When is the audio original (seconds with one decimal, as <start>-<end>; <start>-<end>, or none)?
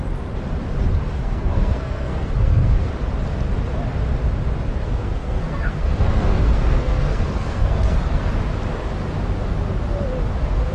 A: 0.0-1.2; 2.9-4.8; 8.3-10.7